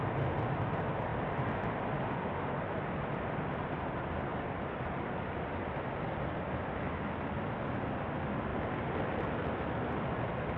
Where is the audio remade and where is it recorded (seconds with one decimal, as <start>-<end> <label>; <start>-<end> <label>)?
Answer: 0.0-1.1 recorded; 1.1-1.8 remade; 1.8-4.3 recorded; 4.3-6.2 remade; 6.2-8.5 recorded; 8.5-9.4 remade; 9.4-10.6 recorded